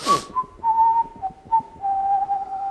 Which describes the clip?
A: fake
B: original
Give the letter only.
B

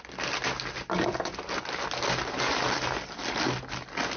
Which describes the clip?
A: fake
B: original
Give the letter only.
B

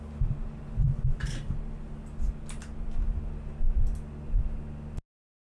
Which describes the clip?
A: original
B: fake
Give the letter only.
A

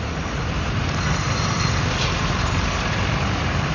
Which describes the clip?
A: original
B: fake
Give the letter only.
A